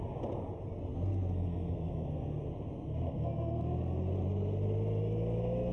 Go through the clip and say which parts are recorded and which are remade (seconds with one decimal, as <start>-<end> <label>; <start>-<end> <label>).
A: 0.0-0.9 recorded; 0.9-3.6 remade; 3.6-5.7 recorded